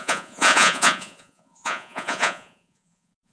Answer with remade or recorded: remade